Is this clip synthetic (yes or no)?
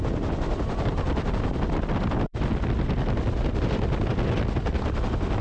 no